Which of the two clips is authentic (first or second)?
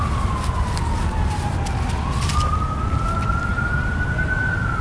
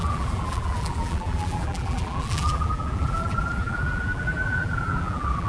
first